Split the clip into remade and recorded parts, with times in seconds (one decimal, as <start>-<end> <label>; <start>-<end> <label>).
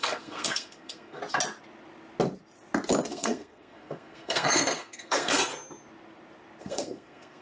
0.0-1.2 remade; 1.2-3.1 recorded; 3.1-5.5 remade; 5.5-6.6 recorded; 6.6-7.4 remade